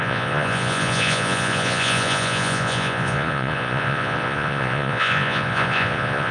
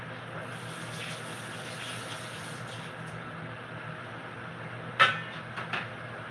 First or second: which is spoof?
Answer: first